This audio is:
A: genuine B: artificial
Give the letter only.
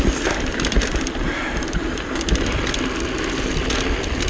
A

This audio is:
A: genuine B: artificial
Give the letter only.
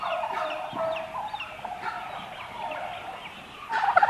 A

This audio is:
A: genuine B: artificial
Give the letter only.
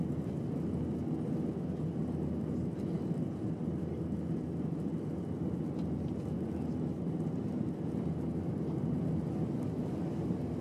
A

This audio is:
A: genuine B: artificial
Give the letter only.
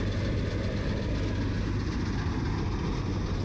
A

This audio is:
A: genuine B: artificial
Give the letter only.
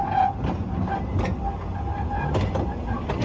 A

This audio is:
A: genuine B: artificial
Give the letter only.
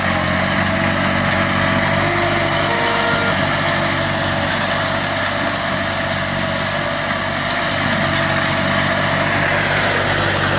A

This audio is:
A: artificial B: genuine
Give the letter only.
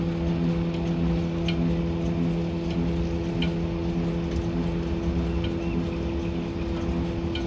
B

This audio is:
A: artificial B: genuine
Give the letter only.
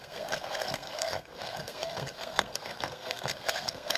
A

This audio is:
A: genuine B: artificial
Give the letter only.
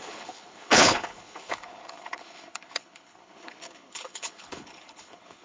B